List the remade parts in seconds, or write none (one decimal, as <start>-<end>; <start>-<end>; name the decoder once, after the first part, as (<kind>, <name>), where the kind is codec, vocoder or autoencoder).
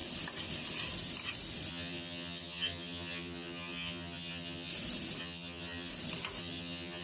1.7-4.7 (vocoder, HiFi-GAN); 5.2-5.9; 6.4-7.0